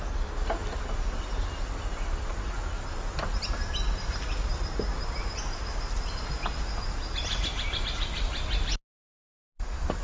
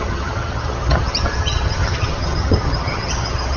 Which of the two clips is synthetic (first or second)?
second